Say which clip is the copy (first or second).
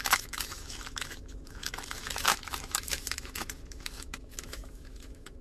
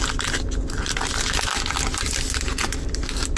first